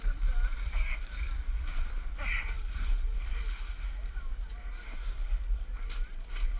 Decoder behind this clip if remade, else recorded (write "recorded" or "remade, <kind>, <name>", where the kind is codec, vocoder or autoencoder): recorded